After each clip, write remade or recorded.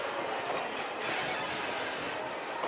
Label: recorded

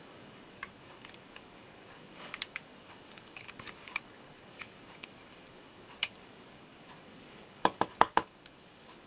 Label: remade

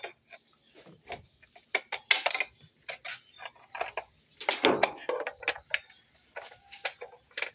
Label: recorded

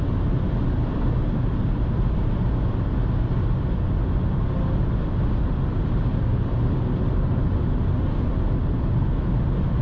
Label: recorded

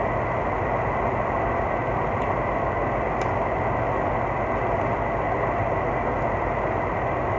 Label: recorded